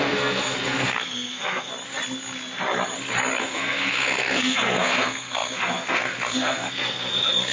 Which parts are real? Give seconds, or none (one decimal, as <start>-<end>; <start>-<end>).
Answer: 1.7-3.4